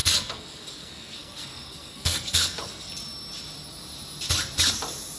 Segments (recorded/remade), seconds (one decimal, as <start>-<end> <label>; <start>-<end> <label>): 0.0-2.9 remade; 2.9-5.2 recorded